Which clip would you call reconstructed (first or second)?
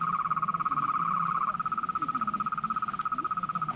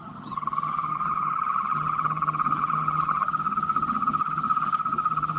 second